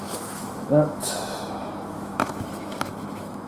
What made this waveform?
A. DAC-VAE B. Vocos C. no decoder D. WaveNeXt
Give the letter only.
A